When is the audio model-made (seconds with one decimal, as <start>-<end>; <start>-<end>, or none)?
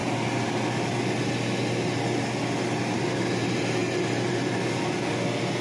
none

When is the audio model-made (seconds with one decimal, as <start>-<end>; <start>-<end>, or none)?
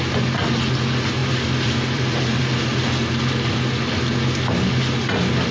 1.2-2.4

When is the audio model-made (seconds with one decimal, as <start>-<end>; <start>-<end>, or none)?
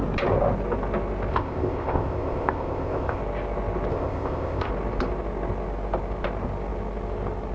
1.3-3.2; 3.9-4.7